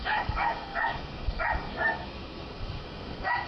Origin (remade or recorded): remade